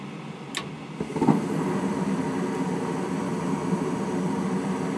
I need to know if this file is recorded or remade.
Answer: recorded